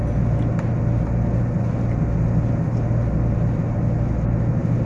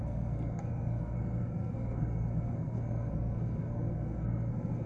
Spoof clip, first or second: second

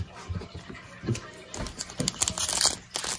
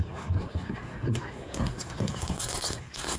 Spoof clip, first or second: second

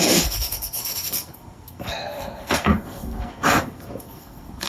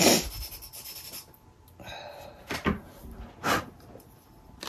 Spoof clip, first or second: first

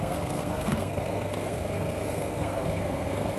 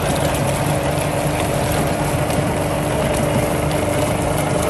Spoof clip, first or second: first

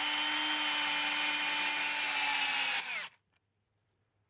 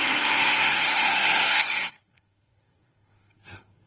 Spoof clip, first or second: second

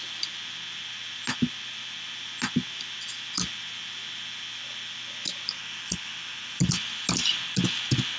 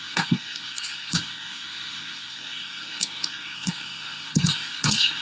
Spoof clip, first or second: second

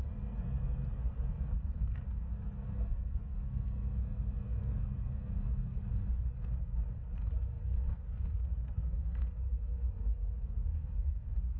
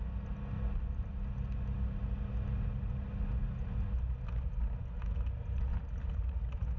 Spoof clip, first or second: first